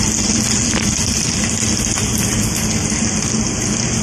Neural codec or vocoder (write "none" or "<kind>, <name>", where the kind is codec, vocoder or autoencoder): none